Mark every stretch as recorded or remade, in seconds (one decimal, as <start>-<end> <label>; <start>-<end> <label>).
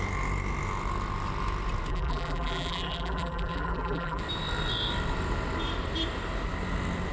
0.0-1.9 recorded; 1.9-4.2 remade; 4.2-7.1 recorded